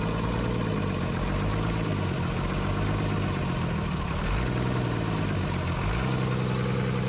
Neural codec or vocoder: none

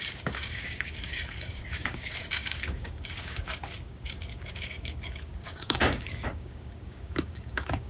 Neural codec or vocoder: codec, DAC